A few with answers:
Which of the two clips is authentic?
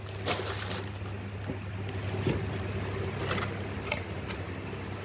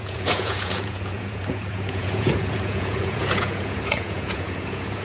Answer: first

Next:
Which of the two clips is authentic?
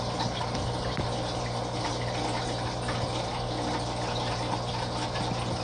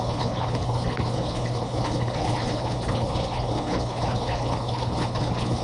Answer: first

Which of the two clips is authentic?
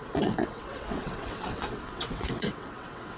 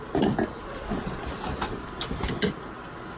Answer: second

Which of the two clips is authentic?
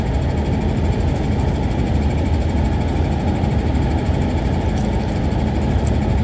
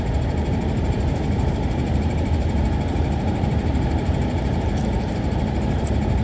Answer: first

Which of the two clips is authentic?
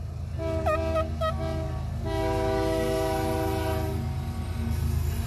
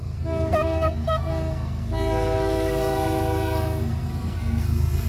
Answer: first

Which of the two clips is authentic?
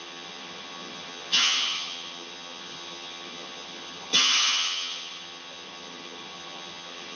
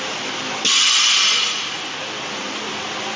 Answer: second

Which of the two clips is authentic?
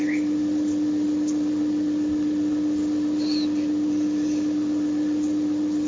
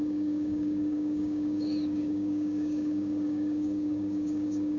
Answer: first